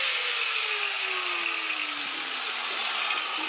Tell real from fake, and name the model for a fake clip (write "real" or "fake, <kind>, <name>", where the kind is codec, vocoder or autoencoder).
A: real